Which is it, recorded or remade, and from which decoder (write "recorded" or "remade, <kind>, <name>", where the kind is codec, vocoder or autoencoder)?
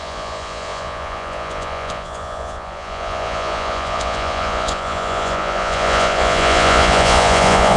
remade, vocoder, Vocos